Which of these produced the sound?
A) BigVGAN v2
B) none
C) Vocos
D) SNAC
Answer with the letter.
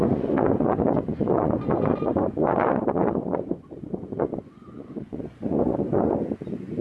C